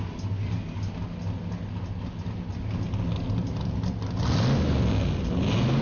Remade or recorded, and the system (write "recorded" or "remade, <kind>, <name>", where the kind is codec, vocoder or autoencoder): recorded